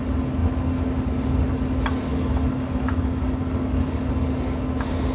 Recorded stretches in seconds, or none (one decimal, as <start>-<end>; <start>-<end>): 0.0-2.1; 4.1-5.1